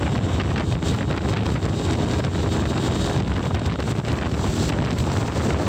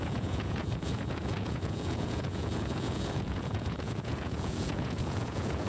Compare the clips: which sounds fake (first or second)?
second